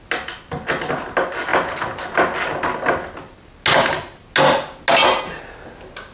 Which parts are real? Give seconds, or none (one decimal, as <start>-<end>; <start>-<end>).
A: 0.0-6.1